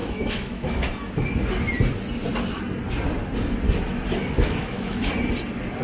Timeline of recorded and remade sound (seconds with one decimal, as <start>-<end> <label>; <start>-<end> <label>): 0.0-0.9 remade; 0.9-4.2 recorded; 4.2-5.1 remade; 5.1-5.8 recorded